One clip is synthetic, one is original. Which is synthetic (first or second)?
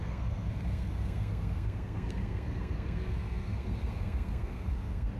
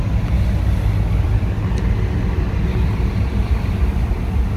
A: first